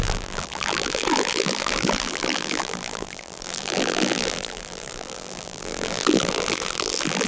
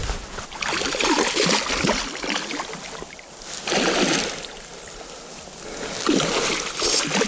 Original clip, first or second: second